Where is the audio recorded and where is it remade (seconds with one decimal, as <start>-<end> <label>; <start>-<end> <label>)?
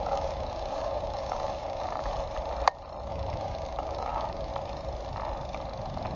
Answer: 0.0-2.1 remade; 2.1-3.1 recorded; 3.1-4.5 remade; 4.5-6.2 recorded